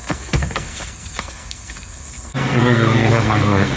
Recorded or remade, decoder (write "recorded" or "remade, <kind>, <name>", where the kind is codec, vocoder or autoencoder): remade, codec, SNAC